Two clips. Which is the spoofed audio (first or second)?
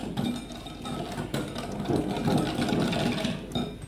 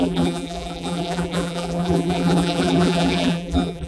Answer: second